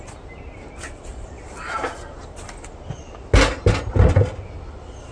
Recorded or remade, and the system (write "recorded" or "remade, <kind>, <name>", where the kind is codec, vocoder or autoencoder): recorded